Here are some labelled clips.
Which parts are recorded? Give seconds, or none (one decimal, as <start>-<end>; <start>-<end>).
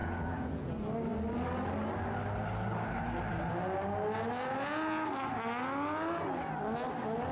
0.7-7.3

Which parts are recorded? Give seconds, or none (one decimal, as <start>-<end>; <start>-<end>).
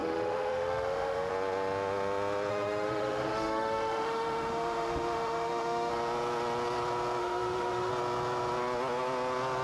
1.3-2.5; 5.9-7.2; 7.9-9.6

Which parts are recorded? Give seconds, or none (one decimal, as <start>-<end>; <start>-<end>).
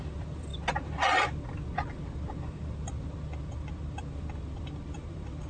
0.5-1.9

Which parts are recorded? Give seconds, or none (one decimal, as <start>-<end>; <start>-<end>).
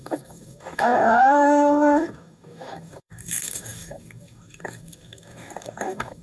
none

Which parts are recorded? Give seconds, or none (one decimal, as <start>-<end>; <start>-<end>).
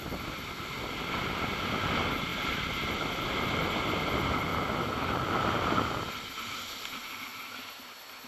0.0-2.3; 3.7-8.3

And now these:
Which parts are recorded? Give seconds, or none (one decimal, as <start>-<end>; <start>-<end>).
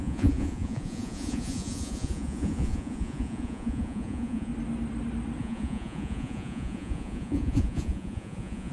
4.5-5.4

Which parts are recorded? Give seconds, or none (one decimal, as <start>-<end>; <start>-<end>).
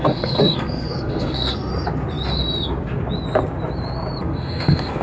1.7-4.2